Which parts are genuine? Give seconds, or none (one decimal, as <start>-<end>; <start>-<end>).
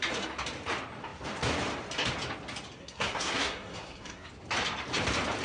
0.0-2.8; 4.3-5.4